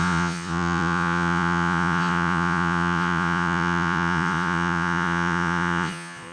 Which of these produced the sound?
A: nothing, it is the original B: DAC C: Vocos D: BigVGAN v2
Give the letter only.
C